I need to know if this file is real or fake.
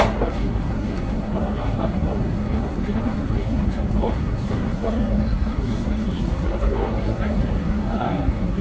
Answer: fake